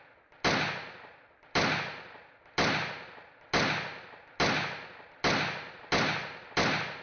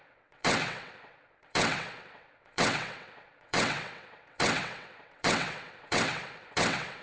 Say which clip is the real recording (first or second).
first